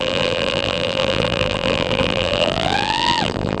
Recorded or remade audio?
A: remade